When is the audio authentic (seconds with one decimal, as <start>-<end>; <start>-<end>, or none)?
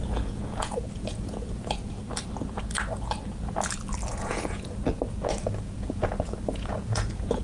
2.0-4.1; 4.8-5.4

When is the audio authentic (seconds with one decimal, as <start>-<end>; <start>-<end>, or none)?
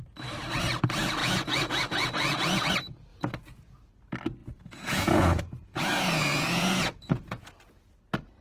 0.0-1.2; 2.7-3.1; 3.9-4.4; 7.5-8.4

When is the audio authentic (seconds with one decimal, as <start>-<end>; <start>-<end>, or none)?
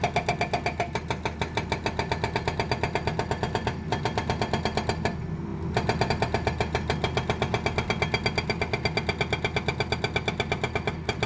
0.0-11.3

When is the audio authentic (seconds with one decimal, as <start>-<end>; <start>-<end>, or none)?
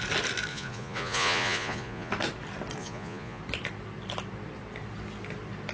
0.0-0.5; 2.1-2.8; 3.4-5.7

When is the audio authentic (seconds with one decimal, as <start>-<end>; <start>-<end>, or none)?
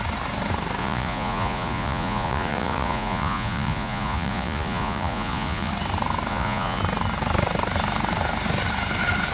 0.0-0.8; 5.7-6.3; 6.8-9.3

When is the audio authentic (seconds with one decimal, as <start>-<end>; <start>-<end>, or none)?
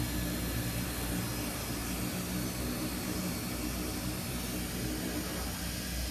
0.0-6.1